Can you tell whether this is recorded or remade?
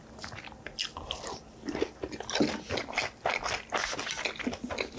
recorded